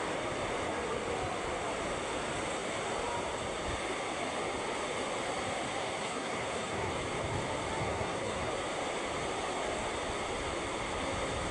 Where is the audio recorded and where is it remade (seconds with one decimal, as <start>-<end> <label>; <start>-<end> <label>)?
0.0-5.8 recorded; 5.8-6.9 remade; 6.9-7.8 recorded; 7.8-8.5 remade; 8.5-11.5 recorded